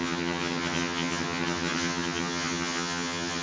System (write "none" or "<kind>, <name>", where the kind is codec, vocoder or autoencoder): vocoder, HiFi-GAN